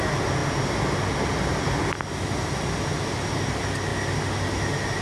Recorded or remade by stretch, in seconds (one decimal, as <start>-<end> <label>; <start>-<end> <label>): 0.0-5.0 recorded